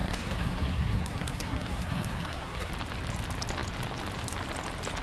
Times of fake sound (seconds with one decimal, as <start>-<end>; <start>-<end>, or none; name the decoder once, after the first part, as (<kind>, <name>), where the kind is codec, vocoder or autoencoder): 0.0-2.7 (codec, SNAC)